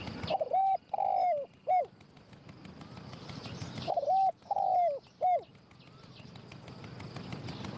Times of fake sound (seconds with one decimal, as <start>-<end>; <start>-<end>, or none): none